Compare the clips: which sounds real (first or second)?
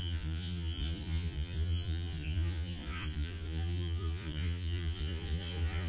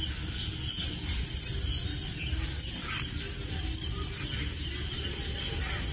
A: second